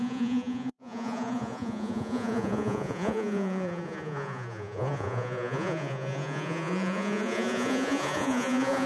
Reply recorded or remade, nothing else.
remade